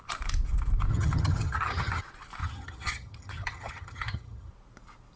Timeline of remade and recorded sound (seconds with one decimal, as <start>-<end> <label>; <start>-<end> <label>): 0.0-0.9 recorded; 0.9-2.0 remade; 2.0-2.4 recorded; 2.4-4.5 remade; 4.5-5.2 recorded